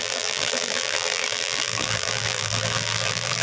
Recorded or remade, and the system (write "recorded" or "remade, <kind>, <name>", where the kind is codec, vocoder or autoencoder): remade, vocoder, BigVGAN v2